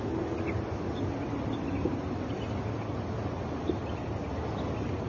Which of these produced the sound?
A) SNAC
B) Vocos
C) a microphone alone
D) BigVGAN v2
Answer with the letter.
C